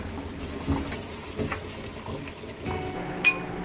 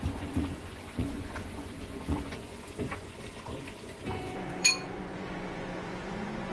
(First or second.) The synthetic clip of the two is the second